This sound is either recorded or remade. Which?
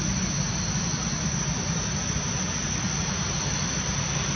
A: recorded